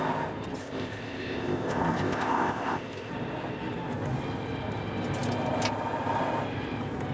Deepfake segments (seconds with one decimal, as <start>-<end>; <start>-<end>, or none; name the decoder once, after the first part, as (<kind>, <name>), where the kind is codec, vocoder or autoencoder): 0.6-3.1 (codec, ZipCodec)